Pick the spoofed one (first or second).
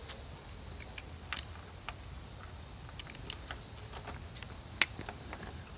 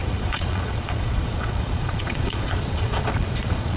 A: second